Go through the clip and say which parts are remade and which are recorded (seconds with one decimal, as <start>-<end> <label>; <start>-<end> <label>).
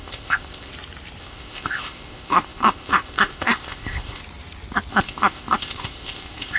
0.0-0.7 remade; 0.7-1.2 recorded; 1.2-4.2 remade; 4.2-4.9 recorded; 4.9-6.6 remade